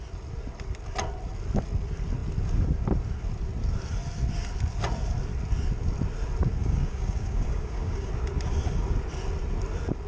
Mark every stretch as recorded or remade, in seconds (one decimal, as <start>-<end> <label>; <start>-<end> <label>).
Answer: 0.0-6.6 recorded; 6.6-8.1 remade; 8.1-10.1 recorded